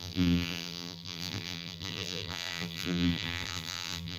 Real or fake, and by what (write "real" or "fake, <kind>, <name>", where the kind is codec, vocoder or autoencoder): fake, vocoder, BigVGAN v2